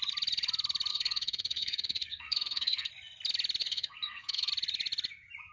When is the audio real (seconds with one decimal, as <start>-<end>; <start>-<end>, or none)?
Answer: 0.0-0.9; 2.9-3.6; 4.5-5.5